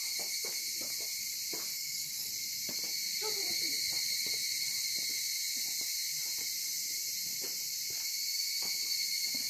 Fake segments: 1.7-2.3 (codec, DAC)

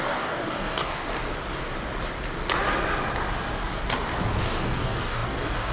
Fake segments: 0.0-1.1 (codec, DAC); 4.4-5.7

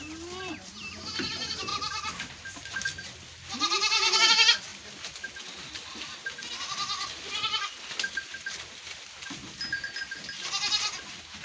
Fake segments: none

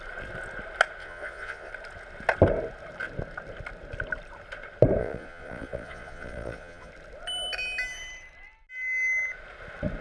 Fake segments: 1.0-1.7 (vocoder, Vocos); 5.0-6.9

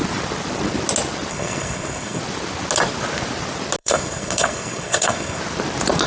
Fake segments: 1.3-2.2 (codec, SNAC); 3.8-5.4

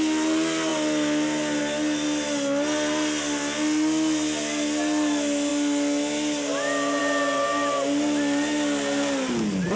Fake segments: none